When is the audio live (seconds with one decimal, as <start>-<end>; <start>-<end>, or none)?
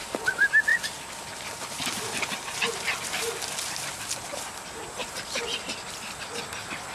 0.0-6.9